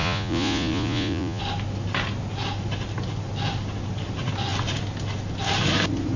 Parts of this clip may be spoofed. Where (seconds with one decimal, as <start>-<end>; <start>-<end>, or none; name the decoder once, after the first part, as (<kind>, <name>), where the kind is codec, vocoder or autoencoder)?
0.0-1.4 (vocoder, Vocos)